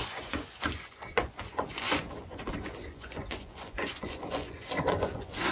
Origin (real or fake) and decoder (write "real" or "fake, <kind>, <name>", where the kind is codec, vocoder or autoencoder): fake, vocoder, Vocos